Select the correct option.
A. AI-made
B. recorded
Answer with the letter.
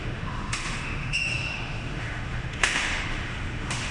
A